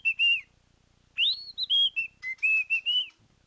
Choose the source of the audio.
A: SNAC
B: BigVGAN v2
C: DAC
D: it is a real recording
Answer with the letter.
D